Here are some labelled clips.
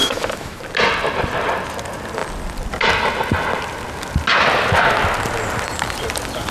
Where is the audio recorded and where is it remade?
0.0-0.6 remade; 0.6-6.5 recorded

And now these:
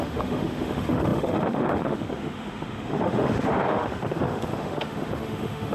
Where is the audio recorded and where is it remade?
0.0-5.7 remade

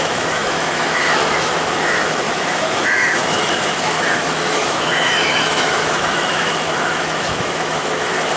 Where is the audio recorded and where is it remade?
0.0-8.4 remade

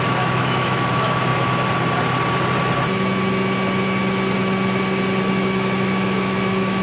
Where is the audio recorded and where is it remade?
0.0-1.3 remade; 1.3-5.3 recorded; 5.3-6.8 remade

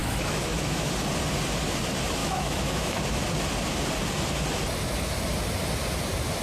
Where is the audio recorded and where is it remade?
0.0-0.9 remade; 0.9-2.2 recorded; 2.2-3.0 remade; 3.0-6.4 recorded

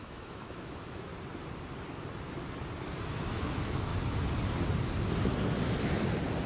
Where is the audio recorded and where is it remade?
0.0-1.1 remade; 1.1-3.1 recorded; 3.1-3.9 remade; 3.9-6.5 recorded